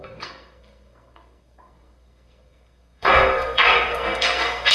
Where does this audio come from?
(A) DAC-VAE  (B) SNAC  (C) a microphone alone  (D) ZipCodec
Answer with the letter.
B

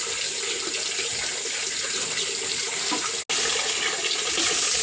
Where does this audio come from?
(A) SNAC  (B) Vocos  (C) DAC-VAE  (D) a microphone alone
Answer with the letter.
D